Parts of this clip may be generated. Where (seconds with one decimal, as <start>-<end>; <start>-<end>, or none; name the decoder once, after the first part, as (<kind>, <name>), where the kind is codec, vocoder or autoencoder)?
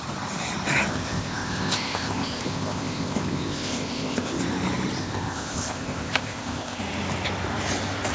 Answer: 0.9-4.4 (codec, ZipCodec); 5.0-6.8